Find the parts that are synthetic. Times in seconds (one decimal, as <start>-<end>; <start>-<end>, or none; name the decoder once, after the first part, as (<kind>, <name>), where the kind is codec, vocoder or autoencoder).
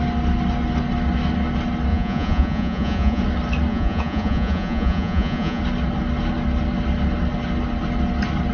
1.9-3.2 (vocoder, Vocos); 3.7-5.6